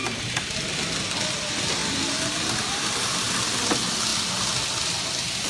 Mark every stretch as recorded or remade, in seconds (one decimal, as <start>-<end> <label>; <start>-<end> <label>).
0.0-1.8 recorded; 1.8-3.0 remade; 3.0-5.5 recorded